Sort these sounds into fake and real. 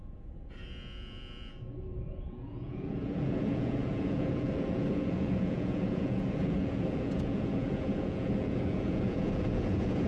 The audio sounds fake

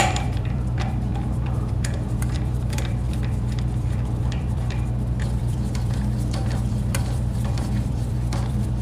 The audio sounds fake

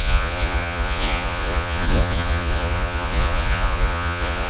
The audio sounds fake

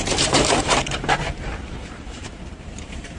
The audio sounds fake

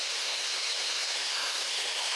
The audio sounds fake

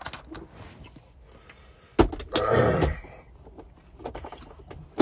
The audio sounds real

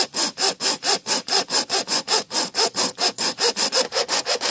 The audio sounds fake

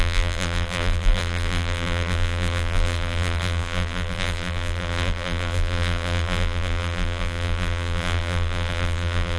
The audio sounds fake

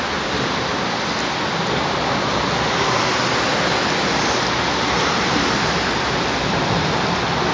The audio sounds real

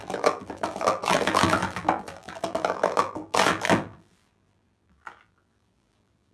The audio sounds fake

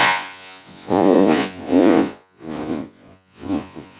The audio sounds fake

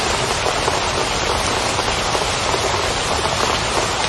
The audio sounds real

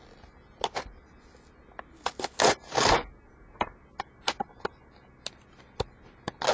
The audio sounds real